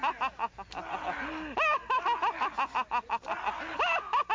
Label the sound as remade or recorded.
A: recorded